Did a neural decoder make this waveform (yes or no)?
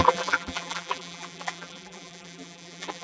yes